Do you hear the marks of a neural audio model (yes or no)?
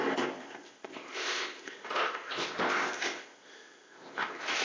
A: yes